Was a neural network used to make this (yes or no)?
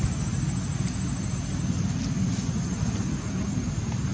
no